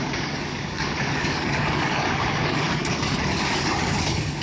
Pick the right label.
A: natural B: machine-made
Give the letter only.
B